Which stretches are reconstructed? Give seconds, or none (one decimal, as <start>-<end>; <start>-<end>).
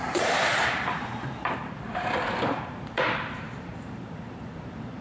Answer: 0.0-5.0